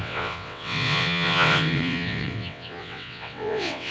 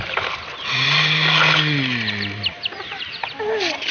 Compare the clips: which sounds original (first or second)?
second